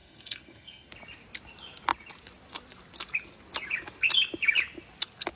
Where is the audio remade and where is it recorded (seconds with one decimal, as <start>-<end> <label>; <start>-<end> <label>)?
0.0-0.9 remade; 0.9-5.4 recorded